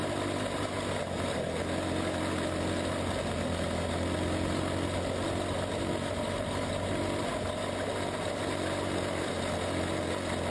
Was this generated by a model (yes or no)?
no